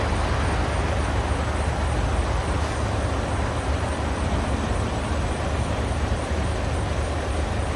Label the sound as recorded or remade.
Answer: recorded